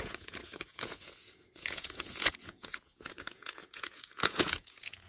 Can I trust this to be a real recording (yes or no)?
no